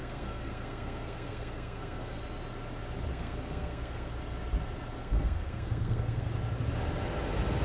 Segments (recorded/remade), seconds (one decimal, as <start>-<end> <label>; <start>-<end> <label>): 0.0-2.2 remade; 2.2-3.1 recorded; 3.1-4.1 remade; 4.1-5.0 recorded; 5.0-6.3 remade; 6.3-7.6 recorded